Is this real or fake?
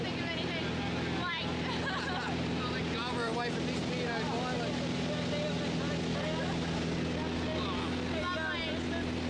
real